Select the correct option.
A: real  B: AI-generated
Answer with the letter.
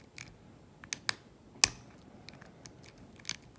A